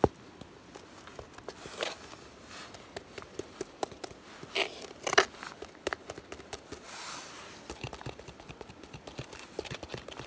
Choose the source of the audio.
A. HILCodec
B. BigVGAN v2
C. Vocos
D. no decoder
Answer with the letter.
D